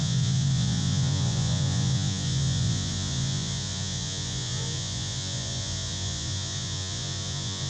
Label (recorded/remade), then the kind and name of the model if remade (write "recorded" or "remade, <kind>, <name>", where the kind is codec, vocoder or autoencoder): remade, vocoder, Vocos